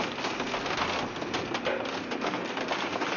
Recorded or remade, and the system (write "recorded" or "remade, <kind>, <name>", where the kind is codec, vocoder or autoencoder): recorded